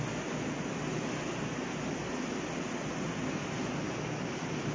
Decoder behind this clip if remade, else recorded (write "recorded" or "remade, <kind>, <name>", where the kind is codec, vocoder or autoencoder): recorded